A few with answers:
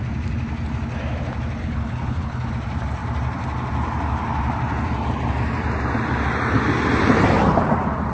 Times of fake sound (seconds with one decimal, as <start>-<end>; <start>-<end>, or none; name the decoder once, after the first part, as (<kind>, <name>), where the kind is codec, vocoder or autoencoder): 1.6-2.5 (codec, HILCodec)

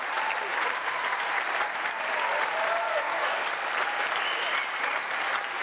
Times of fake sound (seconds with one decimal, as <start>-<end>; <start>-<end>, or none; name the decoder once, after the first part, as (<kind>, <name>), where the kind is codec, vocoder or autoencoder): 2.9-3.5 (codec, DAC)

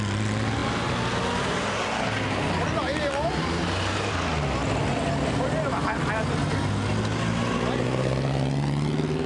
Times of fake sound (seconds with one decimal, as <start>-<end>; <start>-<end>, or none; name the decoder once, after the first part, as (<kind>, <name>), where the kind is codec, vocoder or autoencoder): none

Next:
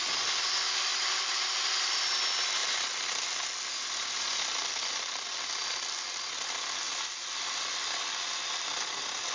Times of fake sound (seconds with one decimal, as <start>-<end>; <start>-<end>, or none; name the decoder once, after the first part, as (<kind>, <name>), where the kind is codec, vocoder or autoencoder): 0.9-2.0 (vocoder, BigVGAN v2)

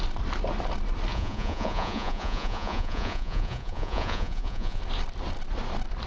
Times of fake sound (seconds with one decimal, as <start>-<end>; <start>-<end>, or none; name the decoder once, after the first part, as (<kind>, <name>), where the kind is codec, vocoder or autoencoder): 1.1-4.8 (vocoder, Vocos)

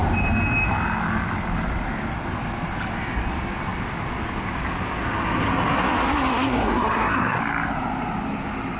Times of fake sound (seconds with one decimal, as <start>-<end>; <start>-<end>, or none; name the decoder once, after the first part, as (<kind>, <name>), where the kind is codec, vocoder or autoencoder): 6.1-7.4 (codec, SNAC)